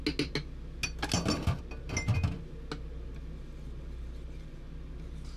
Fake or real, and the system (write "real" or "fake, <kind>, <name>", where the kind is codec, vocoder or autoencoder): real